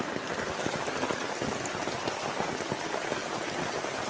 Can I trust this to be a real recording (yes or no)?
yes